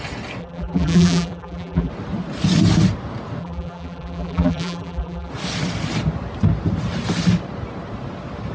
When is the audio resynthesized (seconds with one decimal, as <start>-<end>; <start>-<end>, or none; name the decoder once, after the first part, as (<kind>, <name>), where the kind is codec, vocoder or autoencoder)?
0.4-1.9 (vocoder, BigVGAN v2); 3.4-5.3